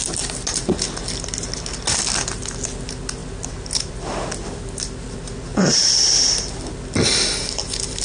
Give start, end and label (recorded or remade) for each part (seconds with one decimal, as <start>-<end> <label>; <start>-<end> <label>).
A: 0.0-5.5 recorded; 5.5-6.2 remade; 6.2-8.0 recorded

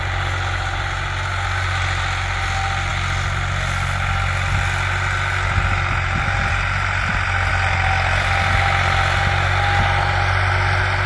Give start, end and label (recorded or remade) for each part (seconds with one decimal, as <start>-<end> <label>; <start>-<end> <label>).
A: 0.0-11.1 recorded

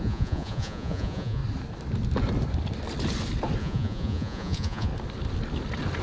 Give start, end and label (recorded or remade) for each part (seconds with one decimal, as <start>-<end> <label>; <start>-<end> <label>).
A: 0.0-1.4 remade; 1.4-3.6 recorded; 3.6-4.9 remade; 4.9-6.0 recorded

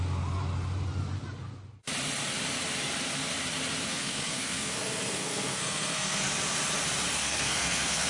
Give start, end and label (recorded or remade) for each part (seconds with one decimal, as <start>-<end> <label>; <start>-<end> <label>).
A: 0.0-3.9 recorded; 3.9-6.2 remade; 6.2-7.2 recorded; 7.2-8.1 remade

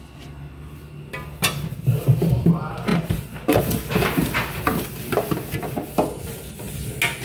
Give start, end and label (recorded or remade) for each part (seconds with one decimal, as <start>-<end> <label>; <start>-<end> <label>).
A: 0.0-2.9 recorded; 2.9-3.6 remade; 3.6-7.2 recorded

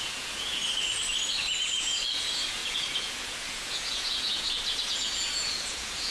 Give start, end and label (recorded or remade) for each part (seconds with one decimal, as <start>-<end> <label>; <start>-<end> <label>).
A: 0.0-0.6 remade; 0.6-1.6 recorded; 1.6-6.1 remade